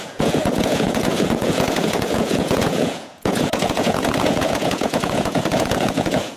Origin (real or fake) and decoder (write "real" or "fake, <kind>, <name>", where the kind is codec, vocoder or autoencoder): fake, vocoder, Vocos